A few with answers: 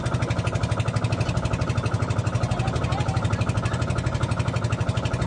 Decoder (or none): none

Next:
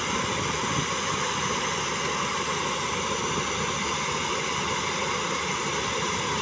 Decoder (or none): none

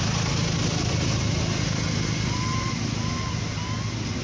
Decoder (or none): none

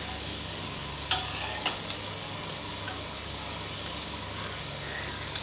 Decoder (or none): codec, DAC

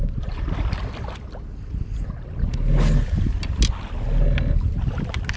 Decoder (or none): none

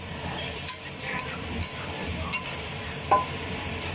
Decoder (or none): vocoder, BigVGAN v2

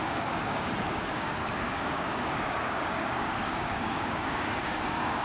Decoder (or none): codec, DAC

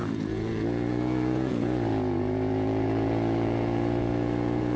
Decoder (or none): vocoder, Vocos